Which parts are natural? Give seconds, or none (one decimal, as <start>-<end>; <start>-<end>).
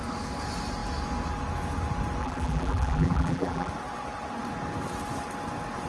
0.0-2.2; 3.7-5.9